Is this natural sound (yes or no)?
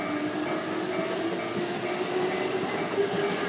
yes